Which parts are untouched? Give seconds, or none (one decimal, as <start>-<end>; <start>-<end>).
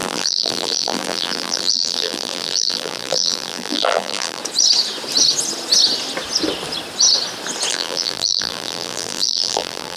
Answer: 4.4-7.7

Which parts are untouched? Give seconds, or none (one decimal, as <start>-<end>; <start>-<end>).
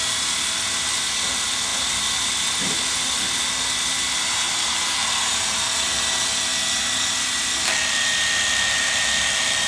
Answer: 0.0-9.7